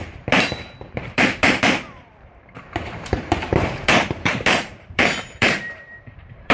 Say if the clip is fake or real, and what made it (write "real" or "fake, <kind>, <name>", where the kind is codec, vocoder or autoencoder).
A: fake, vocoder, BigVGAN v2